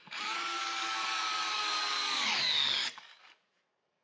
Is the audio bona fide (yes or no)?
no